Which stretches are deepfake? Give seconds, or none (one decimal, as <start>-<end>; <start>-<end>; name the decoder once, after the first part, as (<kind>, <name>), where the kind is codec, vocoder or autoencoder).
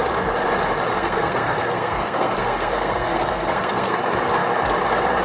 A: 0.9-4.0 (codec, SNAC)